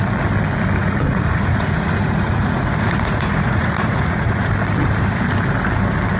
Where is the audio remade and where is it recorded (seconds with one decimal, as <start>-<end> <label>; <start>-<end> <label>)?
0.0-0.8 recorded; 0.8-4.5 remade; 4.5-6.2 recorded